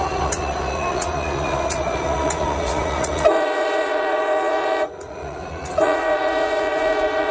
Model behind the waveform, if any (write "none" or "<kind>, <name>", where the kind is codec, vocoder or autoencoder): vocoder, Vocos